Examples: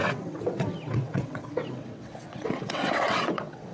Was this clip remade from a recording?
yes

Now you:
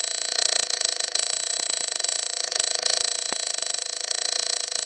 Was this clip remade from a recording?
yes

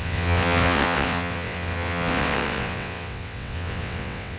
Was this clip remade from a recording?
yes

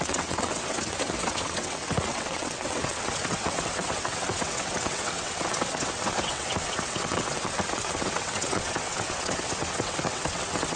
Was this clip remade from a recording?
yes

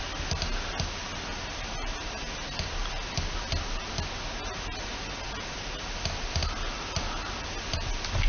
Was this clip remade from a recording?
no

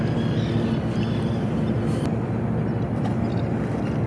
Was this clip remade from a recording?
no